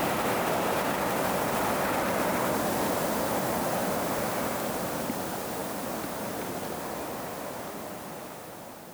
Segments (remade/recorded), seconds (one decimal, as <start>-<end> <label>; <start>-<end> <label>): 0.0-3.8 recorded; 3.8-4.5 remade; 4.5-8.9 recorded